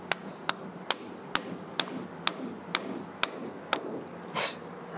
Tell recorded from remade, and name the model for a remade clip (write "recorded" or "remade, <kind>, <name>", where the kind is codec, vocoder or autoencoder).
recorded